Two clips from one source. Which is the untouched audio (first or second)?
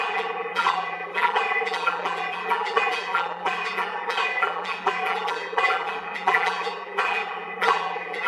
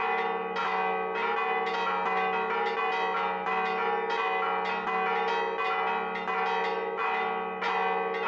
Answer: second